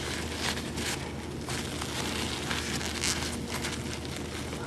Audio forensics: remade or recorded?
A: recorded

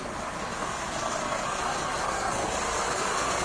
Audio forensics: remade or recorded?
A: remade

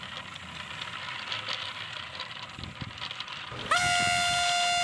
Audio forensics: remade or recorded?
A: recorded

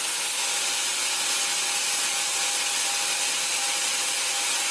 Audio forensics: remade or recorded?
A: recorded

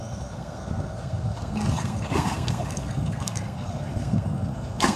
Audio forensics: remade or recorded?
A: remade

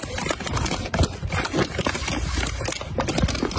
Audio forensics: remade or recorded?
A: recorded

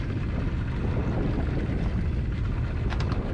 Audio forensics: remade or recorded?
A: recorded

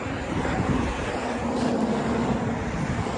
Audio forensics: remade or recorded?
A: recorded